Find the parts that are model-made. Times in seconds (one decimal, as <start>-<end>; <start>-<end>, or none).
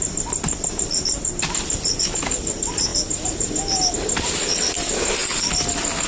none